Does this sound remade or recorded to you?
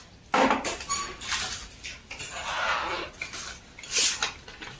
recorded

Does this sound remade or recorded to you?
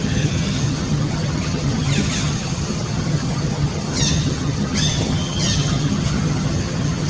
remade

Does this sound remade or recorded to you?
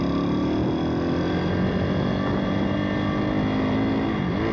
recorded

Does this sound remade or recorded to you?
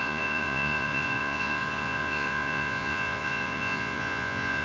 remade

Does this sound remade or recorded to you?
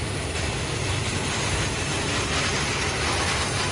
recorded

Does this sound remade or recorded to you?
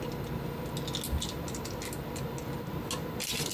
recorded